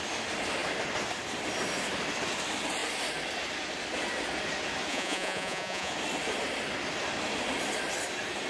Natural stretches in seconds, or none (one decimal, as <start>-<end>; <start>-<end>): 0.0-4.9; 5.9-8.5